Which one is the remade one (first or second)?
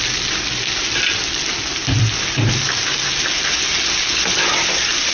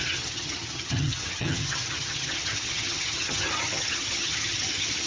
second